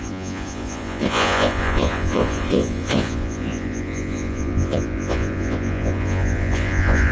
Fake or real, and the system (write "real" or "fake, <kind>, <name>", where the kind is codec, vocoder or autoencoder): fake, vocoder, Vocos